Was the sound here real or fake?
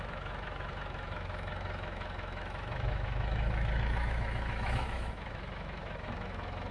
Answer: fake